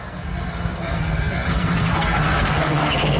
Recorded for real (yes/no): no